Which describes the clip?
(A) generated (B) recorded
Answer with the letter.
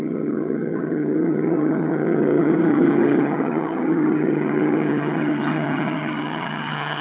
A